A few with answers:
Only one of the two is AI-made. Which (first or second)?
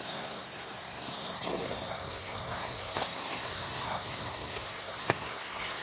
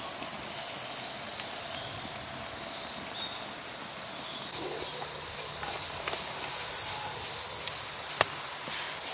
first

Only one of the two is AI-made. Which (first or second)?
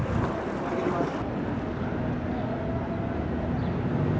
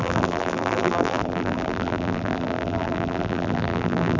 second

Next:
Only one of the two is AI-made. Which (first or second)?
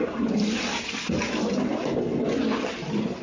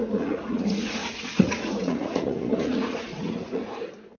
second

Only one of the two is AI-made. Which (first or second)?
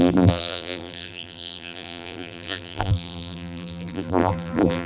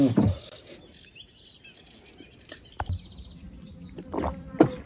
first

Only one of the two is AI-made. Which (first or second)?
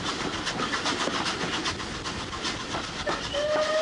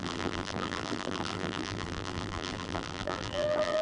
second